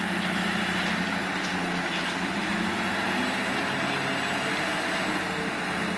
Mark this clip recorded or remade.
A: recorded